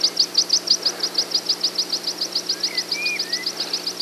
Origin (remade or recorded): recorded